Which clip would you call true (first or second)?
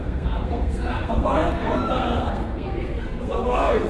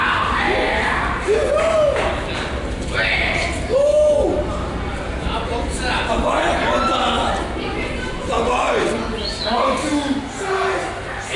second